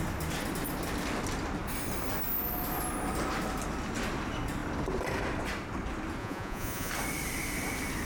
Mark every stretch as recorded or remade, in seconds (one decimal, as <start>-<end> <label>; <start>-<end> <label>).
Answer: 0.0-6.2 recorded; 6.2-6.9 remade; 6.9-8.1 recorded